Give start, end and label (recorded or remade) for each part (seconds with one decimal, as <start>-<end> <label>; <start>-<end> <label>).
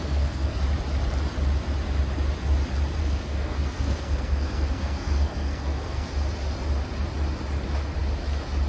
0.0-0.6 remade; 0.6-3.0 recorded; 3.0-6.1 remade; 6.1-8.7 recorded